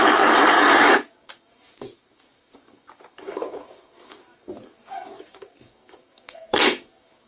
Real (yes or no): no